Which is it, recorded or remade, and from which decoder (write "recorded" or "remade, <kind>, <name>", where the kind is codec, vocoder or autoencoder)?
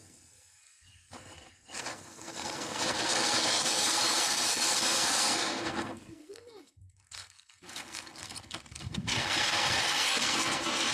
remade, codec, SNAC